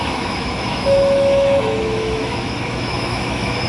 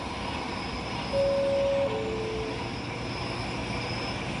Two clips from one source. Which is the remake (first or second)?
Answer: first